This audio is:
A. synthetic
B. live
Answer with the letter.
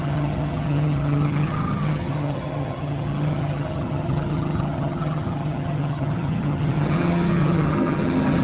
A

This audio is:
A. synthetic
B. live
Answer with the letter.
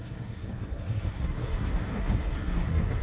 A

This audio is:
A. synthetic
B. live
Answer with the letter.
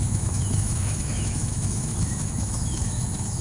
A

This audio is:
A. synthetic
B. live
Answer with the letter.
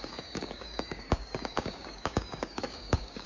A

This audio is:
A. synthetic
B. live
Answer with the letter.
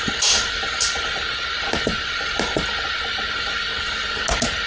B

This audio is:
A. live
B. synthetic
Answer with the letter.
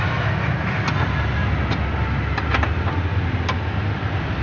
A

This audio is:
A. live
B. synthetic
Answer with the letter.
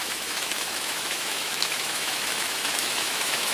B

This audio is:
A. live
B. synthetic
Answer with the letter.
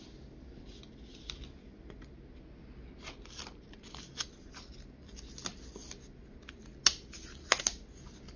A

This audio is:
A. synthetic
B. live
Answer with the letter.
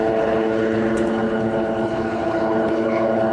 A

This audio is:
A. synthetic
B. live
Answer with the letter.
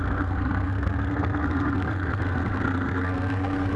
A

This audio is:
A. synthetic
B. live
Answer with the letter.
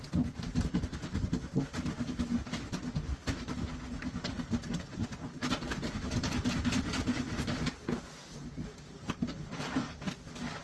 B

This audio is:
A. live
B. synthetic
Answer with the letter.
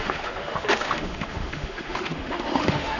B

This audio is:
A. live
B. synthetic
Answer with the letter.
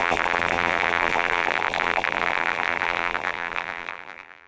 B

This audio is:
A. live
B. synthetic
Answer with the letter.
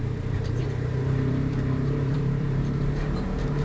B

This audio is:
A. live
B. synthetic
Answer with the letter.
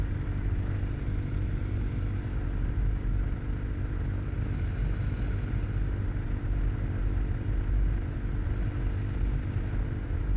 A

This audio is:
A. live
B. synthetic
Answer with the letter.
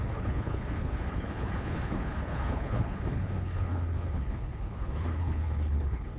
B